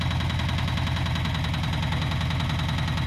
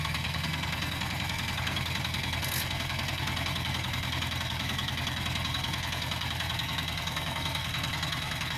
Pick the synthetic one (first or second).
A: second